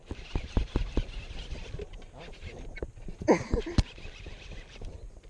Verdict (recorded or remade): recorded